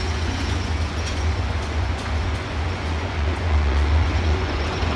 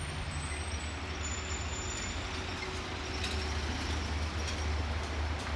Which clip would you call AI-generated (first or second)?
first